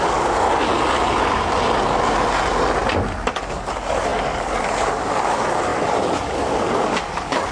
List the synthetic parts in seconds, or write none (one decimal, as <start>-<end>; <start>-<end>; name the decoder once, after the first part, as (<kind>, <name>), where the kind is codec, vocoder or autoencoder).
0.0-0.7 (codec, DAC); 3.3-7.5